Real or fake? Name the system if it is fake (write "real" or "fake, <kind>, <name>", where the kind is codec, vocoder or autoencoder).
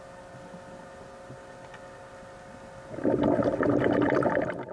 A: real